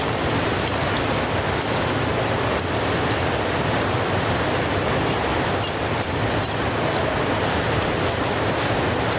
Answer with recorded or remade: recorded